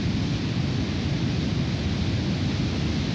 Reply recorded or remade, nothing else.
recorded